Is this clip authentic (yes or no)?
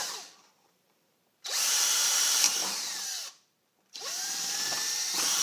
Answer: no